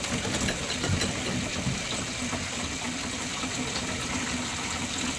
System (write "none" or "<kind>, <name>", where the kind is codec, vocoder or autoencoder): none